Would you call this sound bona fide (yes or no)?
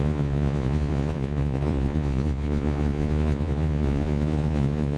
no